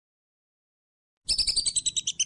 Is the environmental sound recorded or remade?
recorded